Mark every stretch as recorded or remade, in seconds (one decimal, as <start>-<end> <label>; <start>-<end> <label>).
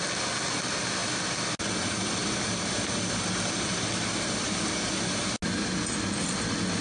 0.0-6.8 recorded